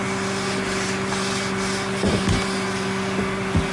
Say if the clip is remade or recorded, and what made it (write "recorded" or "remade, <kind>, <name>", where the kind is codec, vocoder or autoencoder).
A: recorded